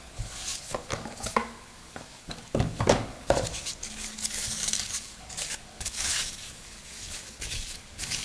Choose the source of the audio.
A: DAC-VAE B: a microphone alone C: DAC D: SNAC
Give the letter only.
C